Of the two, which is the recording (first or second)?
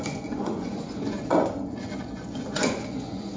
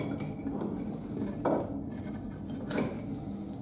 second